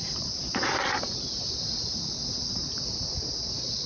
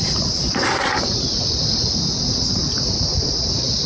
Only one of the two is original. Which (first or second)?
first